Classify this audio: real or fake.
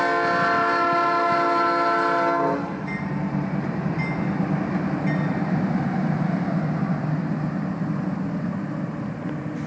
real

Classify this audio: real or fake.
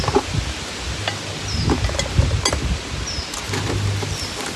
real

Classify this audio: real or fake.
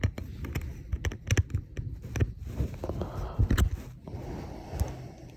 real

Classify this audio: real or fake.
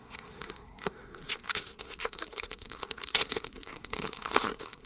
fake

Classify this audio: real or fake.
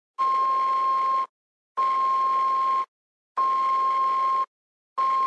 real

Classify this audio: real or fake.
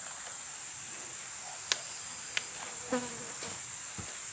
real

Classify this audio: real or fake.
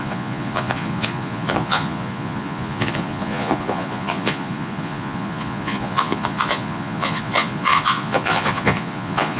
fake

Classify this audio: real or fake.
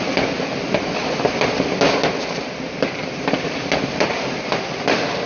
real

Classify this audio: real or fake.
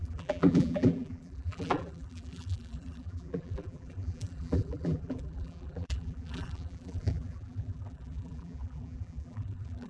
fake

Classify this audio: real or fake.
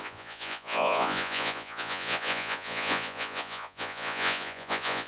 fake